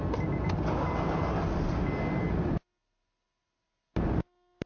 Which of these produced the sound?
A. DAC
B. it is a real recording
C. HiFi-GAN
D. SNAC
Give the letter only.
B